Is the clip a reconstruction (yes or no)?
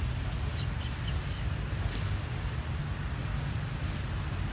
no